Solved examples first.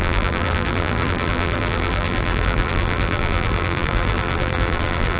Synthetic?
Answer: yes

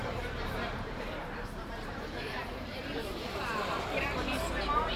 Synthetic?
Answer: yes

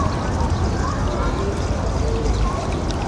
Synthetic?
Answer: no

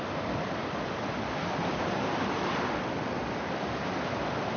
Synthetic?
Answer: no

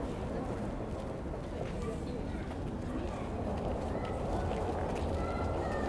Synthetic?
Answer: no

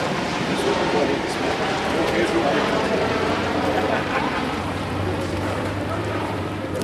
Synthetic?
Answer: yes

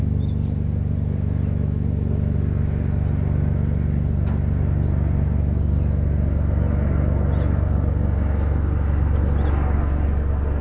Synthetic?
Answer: no